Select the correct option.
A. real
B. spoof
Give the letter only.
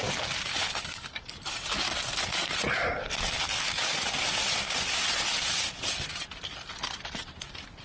A